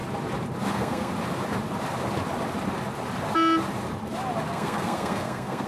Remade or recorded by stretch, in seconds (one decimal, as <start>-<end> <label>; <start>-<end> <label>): 0.0-0.7 recorded; 0.7-1.1 remade; 1.1-4.5 recorded; 4.5-5.7 remade